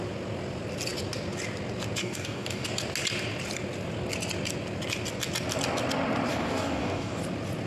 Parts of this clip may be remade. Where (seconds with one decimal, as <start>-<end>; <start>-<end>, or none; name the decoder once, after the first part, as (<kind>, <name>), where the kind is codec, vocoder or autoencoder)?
2.0-2.7 (codec, DAC); 6.3-7.2